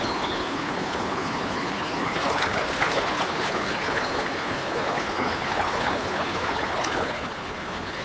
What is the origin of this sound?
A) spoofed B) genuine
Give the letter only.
A